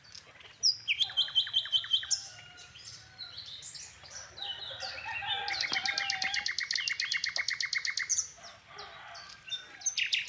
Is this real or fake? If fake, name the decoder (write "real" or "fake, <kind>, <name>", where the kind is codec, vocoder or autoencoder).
real